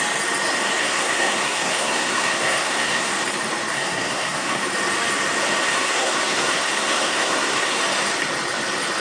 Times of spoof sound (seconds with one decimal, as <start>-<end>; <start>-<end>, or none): 0.8-3.1; 3.7-4.6; 5.6-7.8